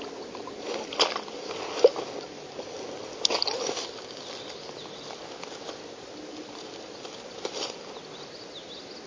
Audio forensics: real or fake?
real